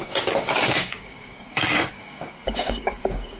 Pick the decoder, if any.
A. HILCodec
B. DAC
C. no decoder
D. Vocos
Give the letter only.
B